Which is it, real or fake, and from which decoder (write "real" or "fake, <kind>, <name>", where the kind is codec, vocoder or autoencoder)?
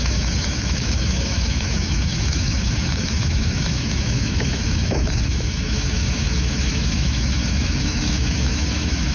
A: fake, autoencoder, DAC-VAE